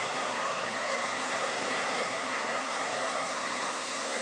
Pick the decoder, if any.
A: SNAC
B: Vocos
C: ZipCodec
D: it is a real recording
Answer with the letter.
A